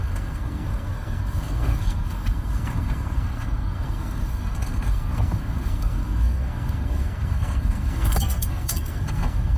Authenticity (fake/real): fake